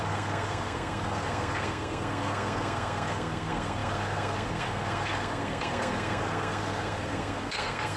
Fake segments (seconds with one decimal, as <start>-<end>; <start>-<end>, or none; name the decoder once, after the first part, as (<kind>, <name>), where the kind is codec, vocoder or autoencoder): 0.0-8.0 (codec, SNAC)